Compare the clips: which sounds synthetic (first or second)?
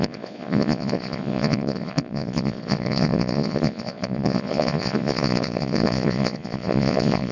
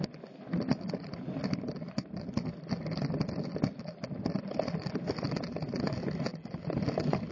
first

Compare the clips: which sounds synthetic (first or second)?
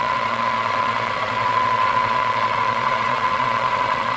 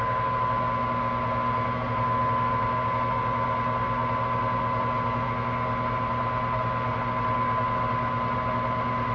first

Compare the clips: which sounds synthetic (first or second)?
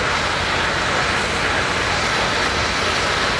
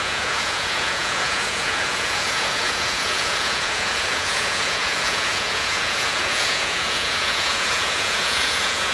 second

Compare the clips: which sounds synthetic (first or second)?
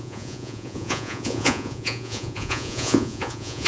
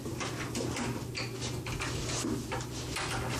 first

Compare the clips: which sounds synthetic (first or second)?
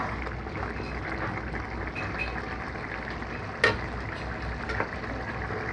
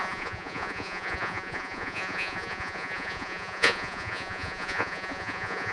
second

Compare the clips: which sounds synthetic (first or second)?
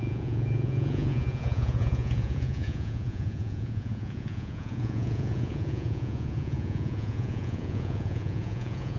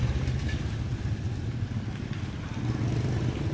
first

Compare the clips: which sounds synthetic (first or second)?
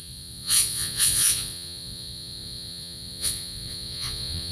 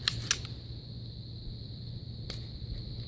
first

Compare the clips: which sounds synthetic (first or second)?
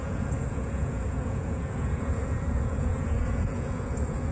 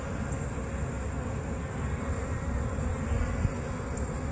first